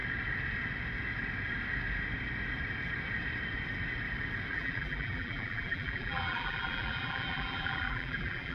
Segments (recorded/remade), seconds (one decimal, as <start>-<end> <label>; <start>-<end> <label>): 0.0-4.5 recorded; 4.5-8.5 remade